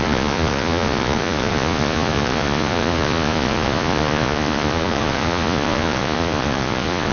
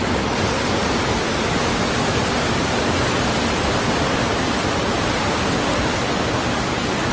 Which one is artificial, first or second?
first